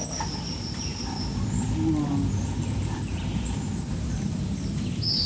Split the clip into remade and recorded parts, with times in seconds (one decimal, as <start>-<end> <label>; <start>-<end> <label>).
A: 0.0-3.1 recorded; 3.1-5.3 remade